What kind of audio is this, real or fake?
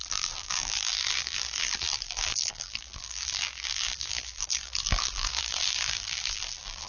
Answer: fake